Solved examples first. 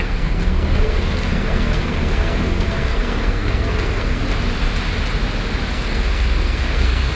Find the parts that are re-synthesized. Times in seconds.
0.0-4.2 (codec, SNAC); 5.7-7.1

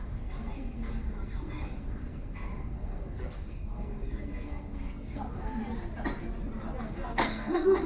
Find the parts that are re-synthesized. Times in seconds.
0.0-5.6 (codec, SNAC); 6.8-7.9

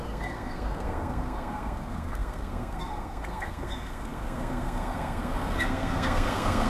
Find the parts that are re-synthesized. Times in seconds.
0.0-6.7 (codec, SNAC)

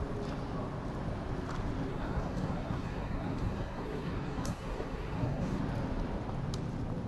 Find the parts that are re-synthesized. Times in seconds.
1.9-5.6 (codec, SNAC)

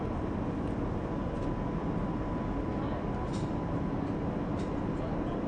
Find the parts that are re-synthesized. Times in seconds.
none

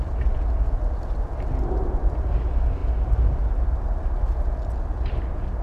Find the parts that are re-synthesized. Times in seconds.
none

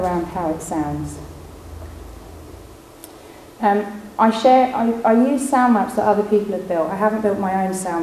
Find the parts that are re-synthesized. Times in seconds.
none

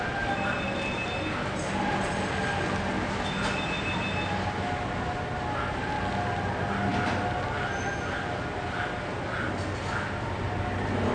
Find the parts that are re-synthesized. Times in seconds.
none